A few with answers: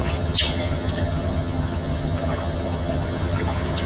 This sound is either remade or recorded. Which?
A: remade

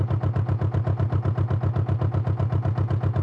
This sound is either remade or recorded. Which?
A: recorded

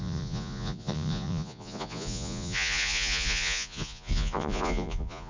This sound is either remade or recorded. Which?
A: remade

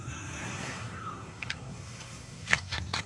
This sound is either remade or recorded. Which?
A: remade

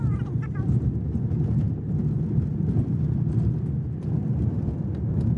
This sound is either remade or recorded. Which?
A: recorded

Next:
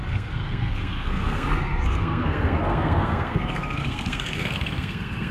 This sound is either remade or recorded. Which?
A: remade